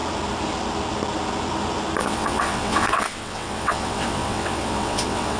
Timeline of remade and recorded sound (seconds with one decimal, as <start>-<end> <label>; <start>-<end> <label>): 0.0-2.0 recorded; 2.0-5.4 remade